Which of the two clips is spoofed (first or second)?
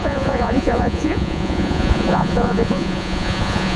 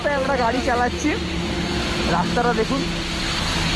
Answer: first